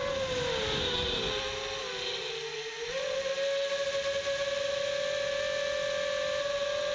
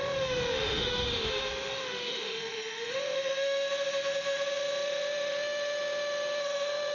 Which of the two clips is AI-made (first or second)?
second